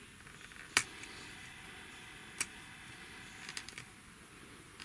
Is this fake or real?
real